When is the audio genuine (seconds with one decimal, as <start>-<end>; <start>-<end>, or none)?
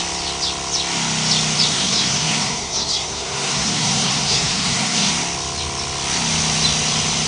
0.0-1.7; 5.1-7.3